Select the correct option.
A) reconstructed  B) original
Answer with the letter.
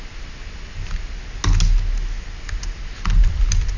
B